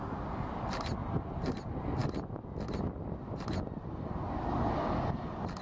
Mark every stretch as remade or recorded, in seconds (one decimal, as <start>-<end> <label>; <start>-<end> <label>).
0.0-5.6 recorded